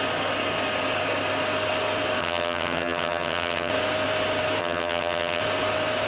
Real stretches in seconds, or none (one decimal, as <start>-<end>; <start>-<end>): 0.0-2.2; 3.7-4.6; 5.4-6.1